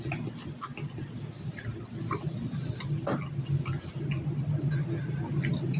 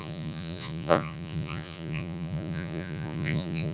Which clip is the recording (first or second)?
first